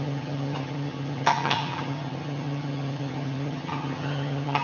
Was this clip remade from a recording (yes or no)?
yes